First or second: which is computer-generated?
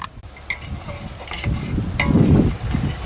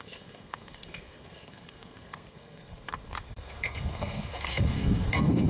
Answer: second